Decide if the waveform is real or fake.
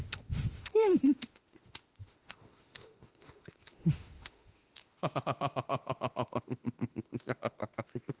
fake